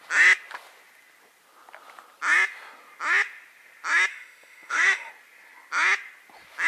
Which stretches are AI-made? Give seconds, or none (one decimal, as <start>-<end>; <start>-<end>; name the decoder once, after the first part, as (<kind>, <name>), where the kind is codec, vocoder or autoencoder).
4.1-5.1 (autoencoder, DAC-VAE)